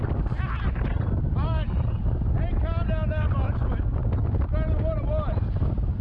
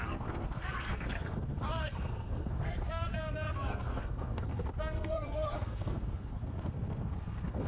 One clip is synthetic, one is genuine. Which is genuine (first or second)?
first